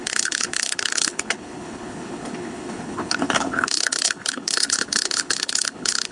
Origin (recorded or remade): remade